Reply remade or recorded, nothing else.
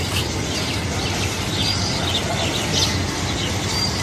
recorded